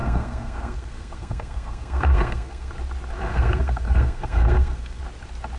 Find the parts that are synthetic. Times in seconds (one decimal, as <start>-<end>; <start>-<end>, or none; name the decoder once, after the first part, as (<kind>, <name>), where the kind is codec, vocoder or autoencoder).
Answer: 0.0-2.7 (codec, SNAC); 3.3-5.0